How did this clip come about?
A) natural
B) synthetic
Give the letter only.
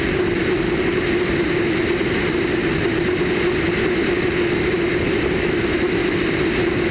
A